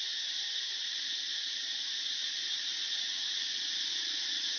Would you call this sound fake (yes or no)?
no